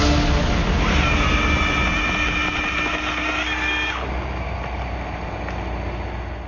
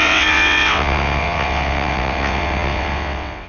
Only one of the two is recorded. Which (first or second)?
first